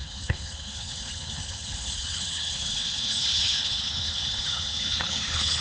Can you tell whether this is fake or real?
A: fake